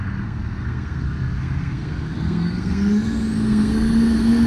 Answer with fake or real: fake